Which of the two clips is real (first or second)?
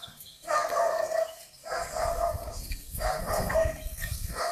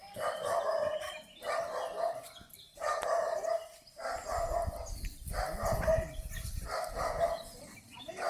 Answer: second